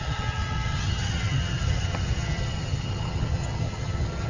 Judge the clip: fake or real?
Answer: fake